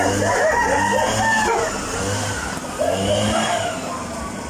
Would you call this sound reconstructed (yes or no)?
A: no